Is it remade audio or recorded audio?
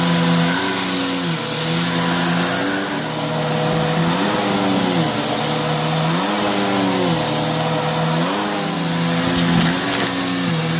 recorded